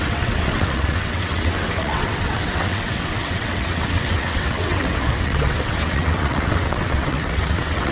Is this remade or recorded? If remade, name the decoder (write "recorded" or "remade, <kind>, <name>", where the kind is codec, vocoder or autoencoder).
remade, vocoder, WaveNeXt